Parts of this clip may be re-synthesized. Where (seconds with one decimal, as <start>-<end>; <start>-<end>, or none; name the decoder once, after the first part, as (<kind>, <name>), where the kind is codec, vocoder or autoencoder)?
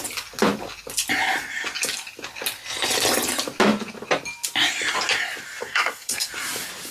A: 5.6-6.3 (codec, SNAC)